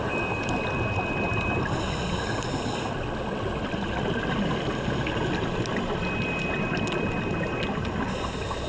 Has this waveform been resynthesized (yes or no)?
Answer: no